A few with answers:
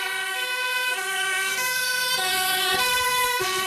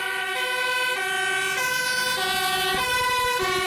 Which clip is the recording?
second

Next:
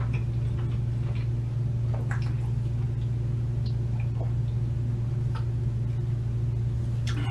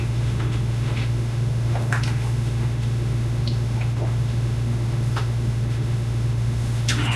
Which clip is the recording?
first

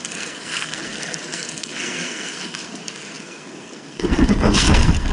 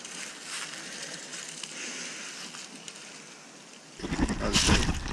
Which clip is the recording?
second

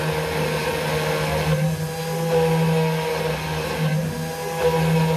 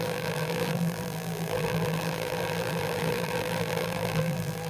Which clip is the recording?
first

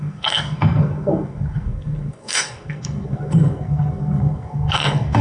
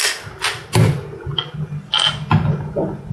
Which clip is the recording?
second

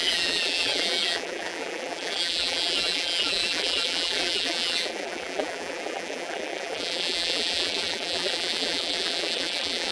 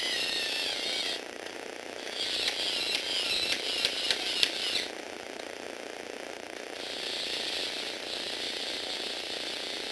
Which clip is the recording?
second